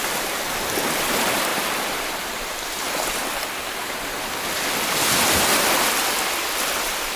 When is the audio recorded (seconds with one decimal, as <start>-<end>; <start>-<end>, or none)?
0.0-1.5; 4.3-7.2